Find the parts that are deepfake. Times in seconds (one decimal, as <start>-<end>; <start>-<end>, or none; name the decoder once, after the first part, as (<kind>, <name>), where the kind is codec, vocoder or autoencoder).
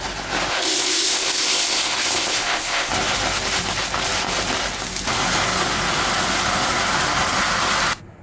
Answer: 0.5-2.9 (codec, ZipCodec)